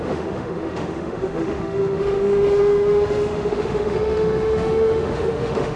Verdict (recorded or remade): remade